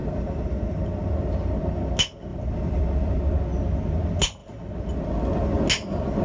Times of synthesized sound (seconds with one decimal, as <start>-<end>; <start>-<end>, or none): 2.3-3.2